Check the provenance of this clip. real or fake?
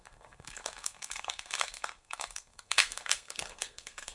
fake